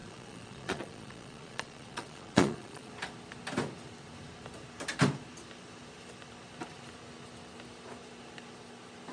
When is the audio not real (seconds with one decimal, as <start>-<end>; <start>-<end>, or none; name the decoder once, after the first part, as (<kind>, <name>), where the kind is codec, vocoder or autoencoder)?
0.0-2.9 (vocoder, Vocos)